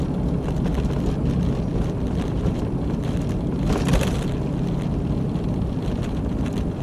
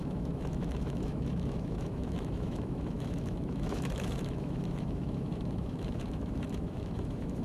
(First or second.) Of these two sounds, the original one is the first